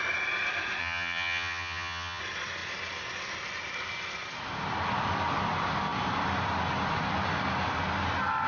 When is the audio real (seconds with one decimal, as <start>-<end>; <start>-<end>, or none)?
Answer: 0.0-0.8; 2.2-8.5